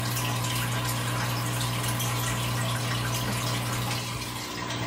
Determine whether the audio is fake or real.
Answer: real